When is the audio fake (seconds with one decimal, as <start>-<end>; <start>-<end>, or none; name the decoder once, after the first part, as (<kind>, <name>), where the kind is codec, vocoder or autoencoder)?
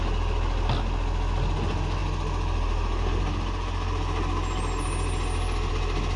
none